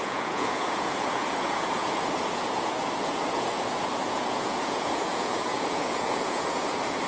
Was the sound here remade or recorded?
remade